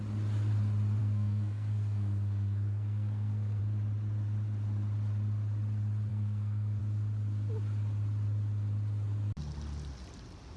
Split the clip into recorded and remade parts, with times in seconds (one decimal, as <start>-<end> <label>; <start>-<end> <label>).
0.0-1.0 recorded; 1.0-3.6 remade; 3.6-6.1 recorded; 6.1-6.8 remade; 6.8-10.6 recorded